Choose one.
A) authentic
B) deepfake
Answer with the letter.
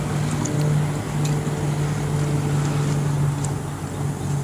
A